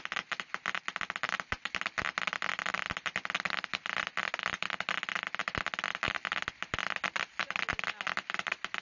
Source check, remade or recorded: recorded